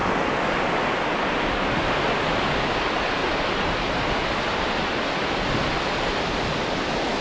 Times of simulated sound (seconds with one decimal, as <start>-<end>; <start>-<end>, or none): 3.2-4.6